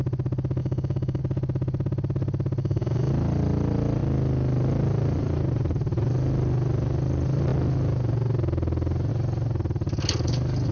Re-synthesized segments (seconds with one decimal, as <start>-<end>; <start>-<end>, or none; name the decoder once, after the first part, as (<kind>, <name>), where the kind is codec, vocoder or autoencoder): 0.6-1.2 (codec, DAC); 2.6-3.1